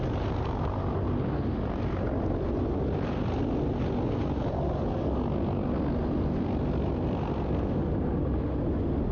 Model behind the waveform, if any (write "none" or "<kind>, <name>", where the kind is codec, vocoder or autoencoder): none